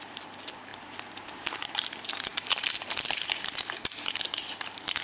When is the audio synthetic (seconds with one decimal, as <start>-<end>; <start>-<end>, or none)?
0.0-0.7; 1.4-5.0